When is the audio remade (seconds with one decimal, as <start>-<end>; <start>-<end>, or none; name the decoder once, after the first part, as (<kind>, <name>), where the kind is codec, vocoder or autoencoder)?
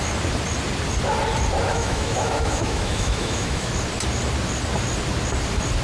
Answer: 1.7-3.7 (autoencoder, DAC-VAE)